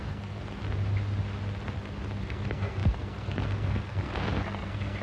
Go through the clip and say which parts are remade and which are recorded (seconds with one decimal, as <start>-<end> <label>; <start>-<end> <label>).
0.0-0.4 remade; 0.4-2.2 recorded; 2.2-5.0 remade